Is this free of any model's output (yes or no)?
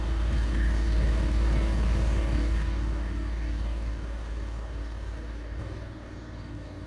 no